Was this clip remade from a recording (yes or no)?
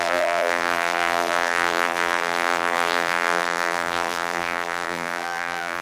yes